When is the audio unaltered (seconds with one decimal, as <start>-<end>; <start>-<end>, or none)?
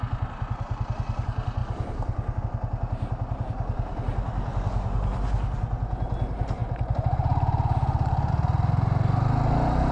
0.0-9.9